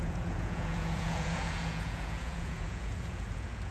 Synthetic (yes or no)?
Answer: yes